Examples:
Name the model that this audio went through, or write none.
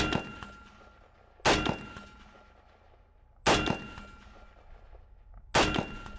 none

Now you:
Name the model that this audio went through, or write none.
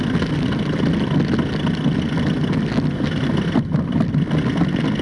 none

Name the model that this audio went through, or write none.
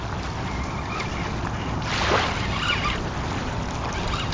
none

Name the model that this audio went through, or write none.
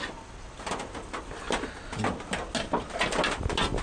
none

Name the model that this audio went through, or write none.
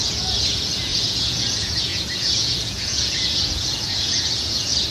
vocoder, Vocos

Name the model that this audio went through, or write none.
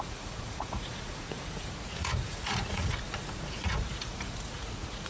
vocoder, Vocos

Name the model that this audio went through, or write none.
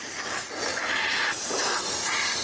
none